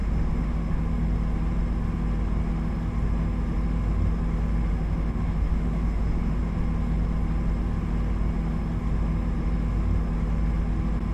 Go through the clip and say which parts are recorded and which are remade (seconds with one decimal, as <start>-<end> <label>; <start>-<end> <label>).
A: 0.0-0.8 remade; 0.8-4.7 recorded; 4.7-6.4 remade; 6.4-11.1 recorded